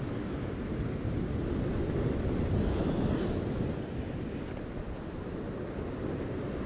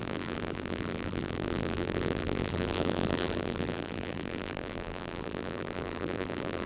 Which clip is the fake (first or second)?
second